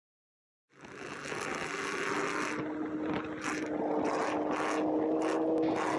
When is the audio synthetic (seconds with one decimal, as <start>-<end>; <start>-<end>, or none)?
none

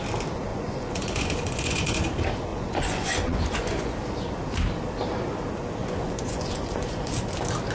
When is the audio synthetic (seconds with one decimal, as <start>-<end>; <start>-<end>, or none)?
0.5-2.0; 2.5-3.9; 5.8-7.1

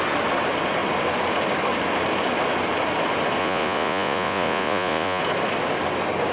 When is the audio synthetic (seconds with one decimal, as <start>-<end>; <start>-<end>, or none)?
3.4-5.2

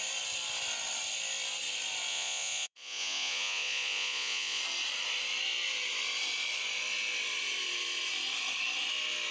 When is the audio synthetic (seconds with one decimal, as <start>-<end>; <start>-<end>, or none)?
2.1-4.6

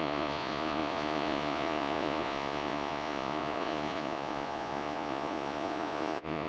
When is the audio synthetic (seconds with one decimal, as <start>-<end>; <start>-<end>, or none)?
0.0-6.5